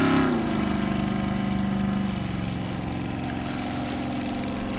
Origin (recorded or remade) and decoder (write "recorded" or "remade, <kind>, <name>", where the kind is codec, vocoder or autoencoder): recorded